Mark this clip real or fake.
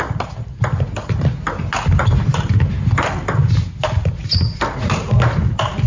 real